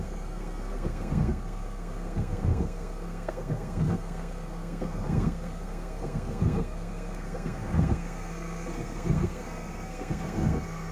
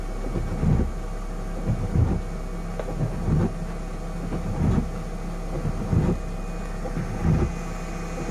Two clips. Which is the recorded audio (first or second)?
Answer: second